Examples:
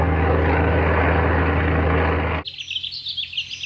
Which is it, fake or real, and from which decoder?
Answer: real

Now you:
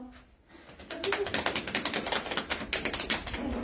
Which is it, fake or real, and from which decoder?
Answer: real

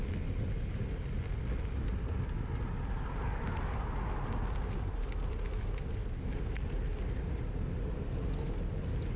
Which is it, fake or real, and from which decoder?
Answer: real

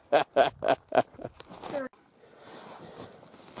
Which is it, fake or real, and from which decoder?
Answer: real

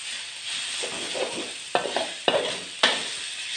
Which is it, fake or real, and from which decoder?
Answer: real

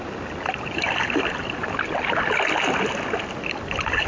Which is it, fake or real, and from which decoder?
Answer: real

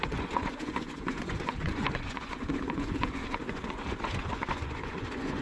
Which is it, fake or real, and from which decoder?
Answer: fake, vocoder, Vocos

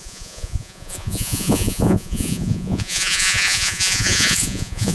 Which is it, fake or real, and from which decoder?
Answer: fake, vocoder, Vocos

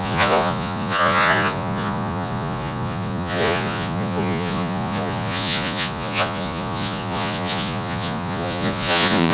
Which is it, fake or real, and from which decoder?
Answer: fake, vocoder, Vocos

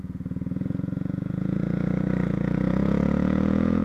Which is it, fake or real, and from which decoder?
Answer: fake, vocoder, Vocos